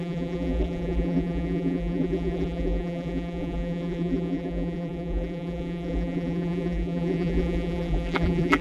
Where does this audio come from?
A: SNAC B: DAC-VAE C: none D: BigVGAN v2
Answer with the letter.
D